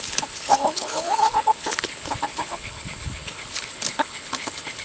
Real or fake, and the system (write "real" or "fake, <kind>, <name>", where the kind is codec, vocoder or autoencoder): fake, codec, HILCodec